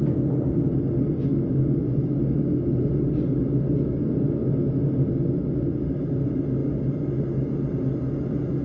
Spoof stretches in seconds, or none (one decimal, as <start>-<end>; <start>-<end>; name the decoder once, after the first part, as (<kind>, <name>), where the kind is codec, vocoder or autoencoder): 1.3-2.7 (autoencoder, DAC-VAE)